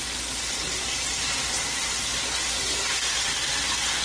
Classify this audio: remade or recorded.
recorded